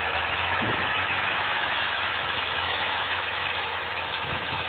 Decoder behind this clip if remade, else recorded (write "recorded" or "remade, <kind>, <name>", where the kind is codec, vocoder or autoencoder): remade, autoencoder, DAC-VAE